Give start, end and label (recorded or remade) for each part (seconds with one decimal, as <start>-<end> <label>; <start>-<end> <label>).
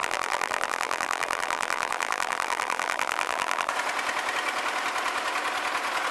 0.0-3.7 remade; 3.7-6.1 recorded